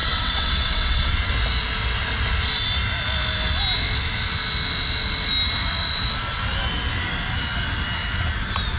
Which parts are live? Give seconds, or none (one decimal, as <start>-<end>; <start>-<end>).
1.3-8.8